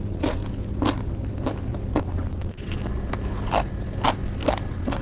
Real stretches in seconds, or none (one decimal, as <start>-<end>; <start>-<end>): 0.4-2.0; 2.8-4.6